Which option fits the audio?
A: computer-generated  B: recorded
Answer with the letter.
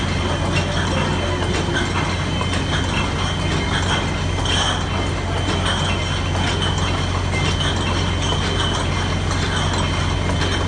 B